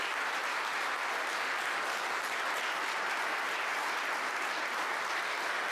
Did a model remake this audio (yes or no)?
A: no